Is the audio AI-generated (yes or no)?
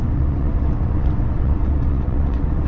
yes